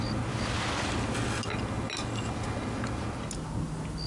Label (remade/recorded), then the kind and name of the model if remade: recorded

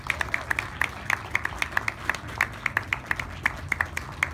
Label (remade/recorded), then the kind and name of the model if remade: recorded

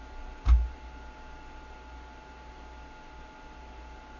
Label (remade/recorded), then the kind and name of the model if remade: recorded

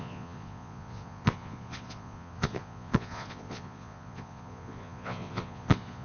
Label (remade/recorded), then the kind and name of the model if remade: remade, vocoder, Vocos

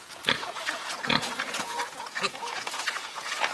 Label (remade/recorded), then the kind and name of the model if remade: remade, vocoder, Vocos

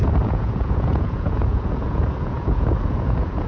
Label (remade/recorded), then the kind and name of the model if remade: remade, vocoder, Vocos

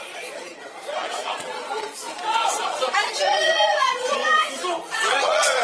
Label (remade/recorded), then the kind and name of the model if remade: remade, vocoder, Vocos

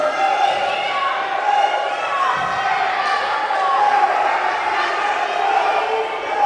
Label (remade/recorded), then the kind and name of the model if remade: recorded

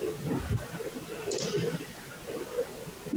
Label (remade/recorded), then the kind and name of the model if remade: recorded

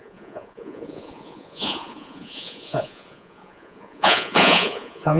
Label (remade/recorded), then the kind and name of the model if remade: remade, vocoder, Vocos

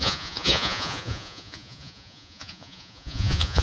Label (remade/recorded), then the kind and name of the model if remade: remade, vocoder, Vocos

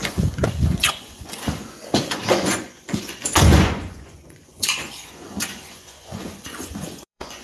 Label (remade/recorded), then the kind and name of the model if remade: remade, vocoder, Vocos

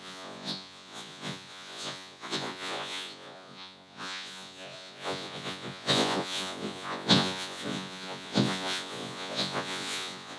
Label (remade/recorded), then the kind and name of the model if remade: remade, vocoder, Vocos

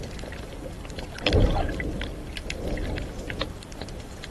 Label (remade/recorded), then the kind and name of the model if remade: recorded